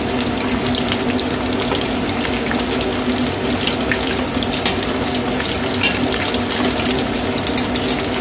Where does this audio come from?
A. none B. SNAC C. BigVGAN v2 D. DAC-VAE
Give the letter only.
A